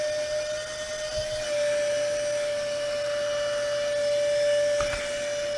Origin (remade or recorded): recorded